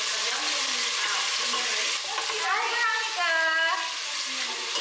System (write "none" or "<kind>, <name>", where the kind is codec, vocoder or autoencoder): none